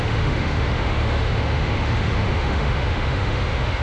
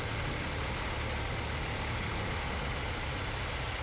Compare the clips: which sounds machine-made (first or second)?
first